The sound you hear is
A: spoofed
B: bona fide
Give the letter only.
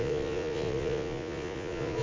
A